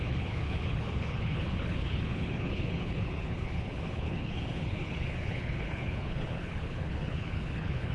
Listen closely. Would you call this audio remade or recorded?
remade